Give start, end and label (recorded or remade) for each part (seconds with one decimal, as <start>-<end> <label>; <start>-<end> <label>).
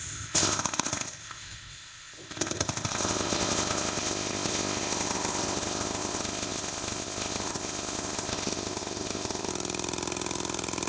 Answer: 0.0-9.5 remade; 9.5-10.9 recorded